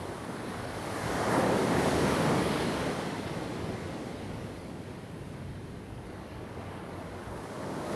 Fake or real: fake